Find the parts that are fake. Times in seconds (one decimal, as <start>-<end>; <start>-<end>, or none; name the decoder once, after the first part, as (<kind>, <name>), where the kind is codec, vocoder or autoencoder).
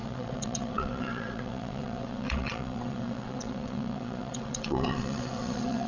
0.0-5.9 (vocoder, WaveNeXt)